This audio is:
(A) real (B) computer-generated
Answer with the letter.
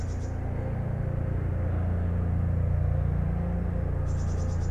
A